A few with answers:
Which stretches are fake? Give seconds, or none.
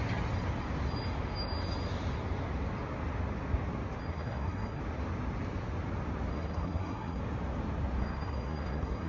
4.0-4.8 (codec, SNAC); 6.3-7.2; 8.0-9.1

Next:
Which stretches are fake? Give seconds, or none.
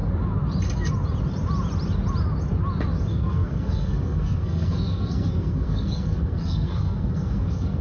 3.1-7.8 (codec, SNAC)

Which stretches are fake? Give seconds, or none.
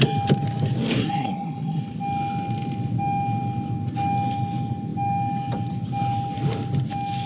1.0-1.8 (codec, SNAC)